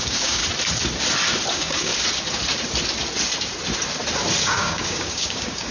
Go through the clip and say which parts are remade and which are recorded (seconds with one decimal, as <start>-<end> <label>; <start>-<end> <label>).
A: 0.0-0.4 remade; 0.4-1.5 recorded; 1.5-1.9 remade; 1.9-4.4 recorded; 4.4-5.7 remade